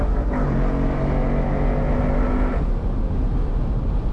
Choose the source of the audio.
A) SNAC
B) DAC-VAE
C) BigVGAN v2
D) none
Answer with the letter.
D